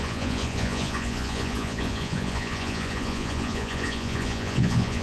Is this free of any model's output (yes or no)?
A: no